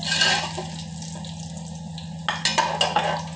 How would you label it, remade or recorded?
recorded